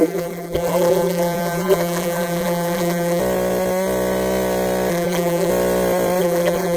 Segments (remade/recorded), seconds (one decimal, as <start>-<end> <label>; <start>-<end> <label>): 0.0-3.2 remade; 3.2-4.9 recorded; 4.9-5.5 remade; 5.5-6.2 recorded; 6.2-6.8 remade